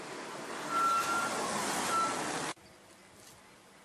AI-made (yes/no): no